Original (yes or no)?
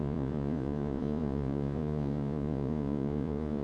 no